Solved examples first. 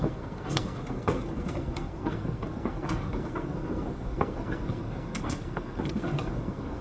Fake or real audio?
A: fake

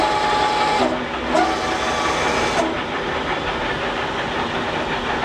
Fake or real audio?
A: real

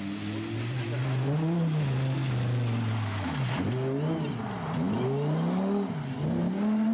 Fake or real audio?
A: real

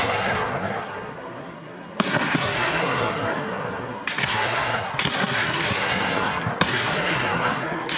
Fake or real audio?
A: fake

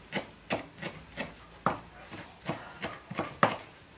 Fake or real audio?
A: real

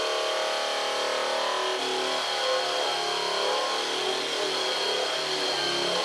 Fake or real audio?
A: real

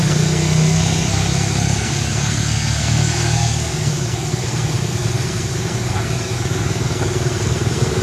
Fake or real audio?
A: fake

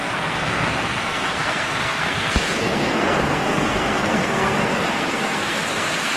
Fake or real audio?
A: fake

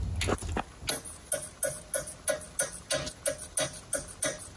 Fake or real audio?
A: real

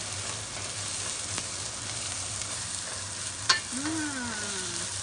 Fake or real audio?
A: real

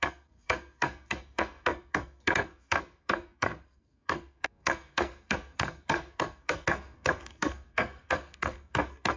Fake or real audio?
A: fake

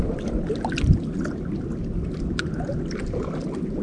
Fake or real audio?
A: real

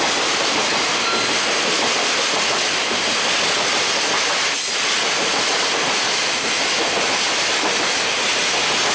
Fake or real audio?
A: real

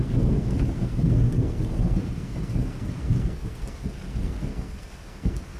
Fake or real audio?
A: fake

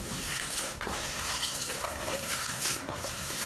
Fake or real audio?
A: fake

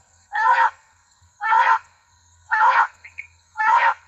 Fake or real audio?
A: fake